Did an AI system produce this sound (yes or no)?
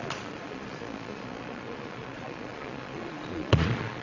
yes